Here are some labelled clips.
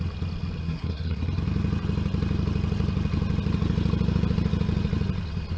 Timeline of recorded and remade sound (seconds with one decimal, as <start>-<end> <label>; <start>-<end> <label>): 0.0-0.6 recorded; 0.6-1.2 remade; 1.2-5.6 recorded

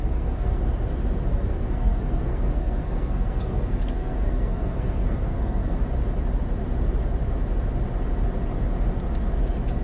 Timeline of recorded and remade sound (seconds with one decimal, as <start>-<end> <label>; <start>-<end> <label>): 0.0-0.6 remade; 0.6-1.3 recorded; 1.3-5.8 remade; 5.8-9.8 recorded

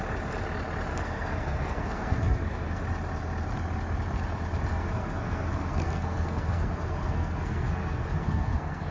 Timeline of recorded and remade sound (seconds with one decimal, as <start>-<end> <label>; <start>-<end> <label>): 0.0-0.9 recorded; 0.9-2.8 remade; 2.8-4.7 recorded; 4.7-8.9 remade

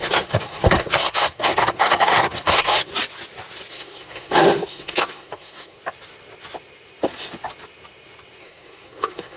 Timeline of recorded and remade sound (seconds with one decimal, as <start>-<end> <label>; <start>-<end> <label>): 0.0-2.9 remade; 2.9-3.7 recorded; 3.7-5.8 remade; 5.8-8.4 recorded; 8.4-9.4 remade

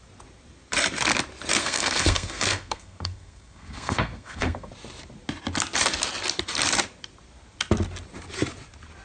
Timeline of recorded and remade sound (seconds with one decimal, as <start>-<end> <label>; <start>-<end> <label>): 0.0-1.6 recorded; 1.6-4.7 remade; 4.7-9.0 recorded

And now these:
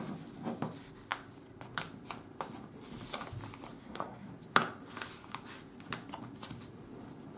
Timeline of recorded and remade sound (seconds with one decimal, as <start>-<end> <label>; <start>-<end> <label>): 0.0-3.8 recorded; 3.8-4.3 remade; 4.3-7.4 recorded

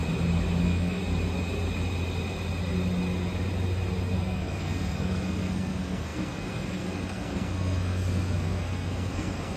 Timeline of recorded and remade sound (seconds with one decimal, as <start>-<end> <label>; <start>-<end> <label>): 0.0-0.6 recorded; 0.6-1.0 remade; 1.0-4.2 recorded; 4.2-9.6 remade